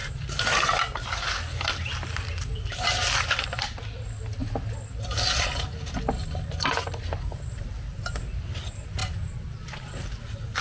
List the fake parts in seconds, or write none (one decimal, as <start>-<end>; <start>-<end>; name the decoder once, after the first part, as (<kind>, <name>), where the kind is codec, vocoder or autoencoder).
none